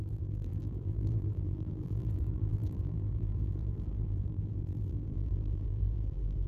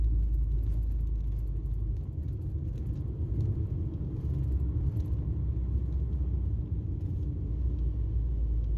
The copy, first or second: first